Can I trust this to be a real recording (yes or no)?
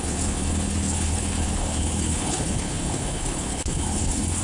no